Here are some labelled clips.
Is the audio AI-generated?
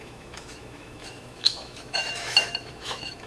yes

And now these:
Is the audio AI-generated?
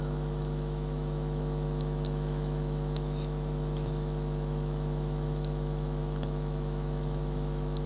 yes